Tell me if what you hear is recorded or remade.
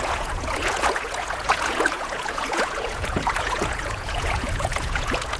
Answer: remade